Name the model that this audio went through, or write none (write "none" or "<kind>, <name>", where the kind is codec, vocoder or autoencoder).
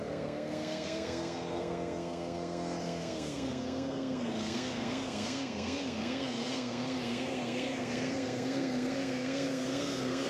codec, SNAC